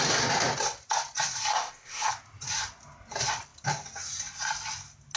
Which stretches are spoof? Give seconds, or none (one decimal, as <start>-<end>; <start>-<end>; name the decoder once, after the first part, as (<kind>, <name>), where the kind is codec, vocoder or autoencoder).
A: 1.5-2.1 (codec, ZipCodec)